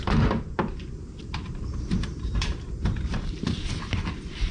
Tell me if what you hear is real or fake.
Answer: fake